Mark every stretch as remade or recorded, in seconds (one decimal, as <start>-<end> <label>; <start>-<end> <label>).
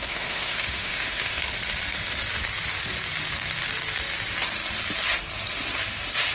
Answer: 0.0-1.4 remade; 1.4-6.3 recorded